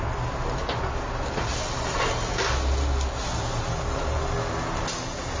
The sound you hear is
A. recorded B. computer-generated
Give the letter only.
A